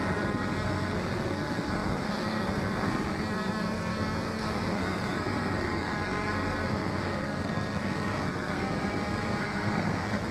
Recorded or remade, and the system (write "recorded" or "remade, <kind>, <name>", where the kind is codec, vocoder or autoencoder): remade, codec, SNAC